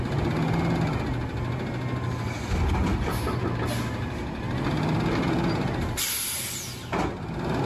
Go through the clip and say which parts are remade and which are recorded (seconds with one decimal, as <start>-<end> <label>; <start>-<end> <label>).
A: 0.0-7.7 recorded

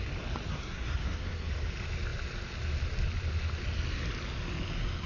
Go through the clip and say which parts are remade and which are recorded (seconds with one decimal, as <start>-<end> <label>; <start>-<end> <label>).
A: 0.0-0.5 recorded; 0.5-1.5 remade; 1.5-5.1 recorded

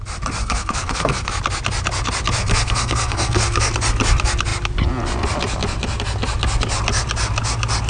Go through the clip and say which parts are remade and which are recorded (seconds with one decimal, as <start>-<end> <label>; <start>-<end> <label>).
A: 0.0-0.4 recorded; 0.4-1.3 remade; 1.3-2.4 recorded; 2.4-3.7 remade; 3.7-7.9 recorded

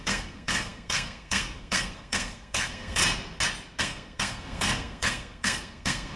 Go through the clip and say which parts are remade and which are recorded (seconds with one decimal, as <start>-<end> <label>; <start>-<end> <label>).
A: 0.0-3.0 remade; 3.0-3.8 recorded; 3.8-6.2 remade